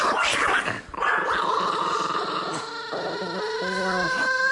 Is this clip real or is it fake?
real